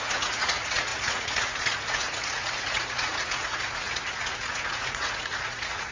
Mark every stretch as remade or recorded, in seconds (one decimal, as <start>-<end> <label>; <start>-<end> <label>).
0.0-5.9 remade